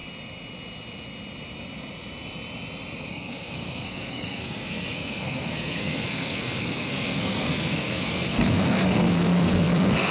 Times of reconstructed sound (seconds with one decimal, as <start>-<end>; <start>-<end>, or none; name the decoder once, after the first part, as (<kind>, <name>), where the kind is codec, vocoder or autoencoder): 3.1-10.1 (codec, SNAC)